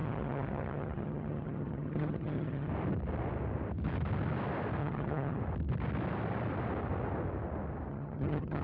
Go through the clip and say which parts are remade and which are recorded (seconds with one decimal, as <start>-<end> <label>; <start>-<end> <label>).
0.0-2.7 remade; 2.7-4.8 recorded; 4.8-5.4 remade; 5.4-7.9 recorded; 7.9-8.6 remade